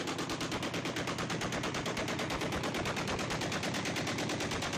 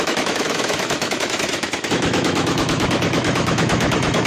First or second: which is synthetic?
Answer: second